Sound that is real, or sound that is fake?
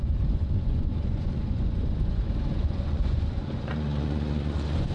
fake